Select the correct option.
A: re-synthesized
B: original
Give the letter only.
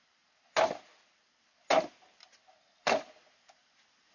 B